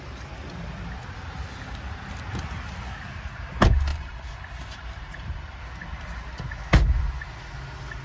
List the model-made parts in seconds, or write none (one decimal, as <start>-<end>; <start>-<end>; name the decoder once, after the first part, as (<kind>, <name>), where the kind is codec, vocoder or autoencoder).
3.9-5.6 (vocoder, BigVGAN v2)